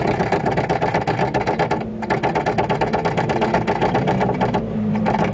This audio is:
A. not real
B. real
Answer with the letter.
B